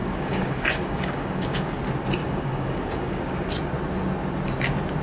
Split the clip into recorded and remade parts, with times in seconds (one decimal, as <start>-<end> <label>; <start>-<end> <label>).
0.0-1.8 remade; 1.8-2.2 recorded; 2.2-3.2 remade; 3.2-5.0 recorded